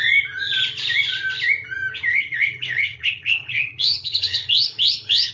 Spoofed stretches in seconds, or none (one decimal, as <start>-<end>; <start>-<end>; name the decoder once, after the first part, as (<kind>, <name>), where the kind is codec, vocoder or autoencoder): 2.1-5.3 (codec, HILCodec)